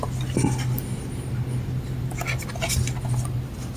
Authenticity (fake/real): real